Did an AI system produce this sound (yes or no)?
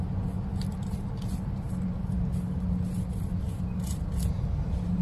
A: no